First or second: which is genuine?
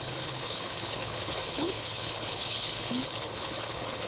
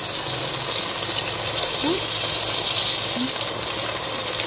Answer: second